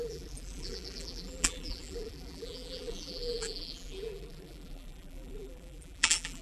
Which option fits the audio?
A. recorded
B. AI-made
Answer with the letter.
B